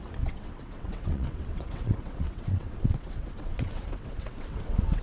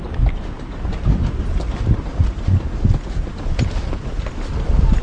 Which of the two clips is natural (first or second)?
second